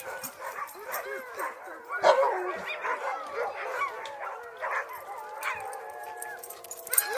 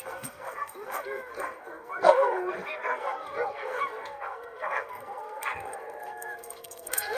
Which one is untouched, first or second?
first